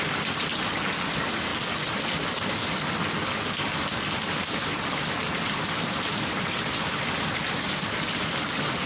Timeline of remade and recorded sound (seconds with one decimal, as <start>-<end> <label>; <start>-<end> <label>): 0.0-8.9 recorded